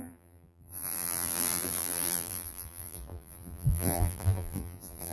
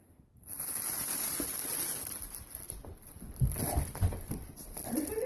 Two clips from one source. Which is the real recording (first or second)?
second